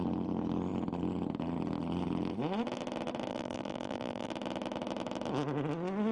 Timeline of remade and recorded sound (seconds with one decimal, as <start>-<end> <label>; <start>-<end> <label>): 0.0-3.3 recorded; 3.3-4.3 remade; 4.3-6.1 recorded